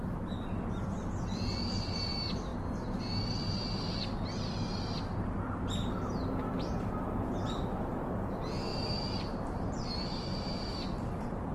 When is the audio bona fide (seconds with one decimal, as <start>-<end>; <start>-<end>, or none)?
2.5-7.5; 8.7-9.6